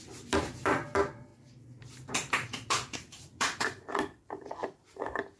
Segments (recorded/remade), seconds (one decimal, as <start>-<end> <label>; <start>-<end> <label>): 0.0-5.4 remade